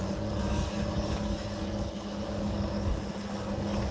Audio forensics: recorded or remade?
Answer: remade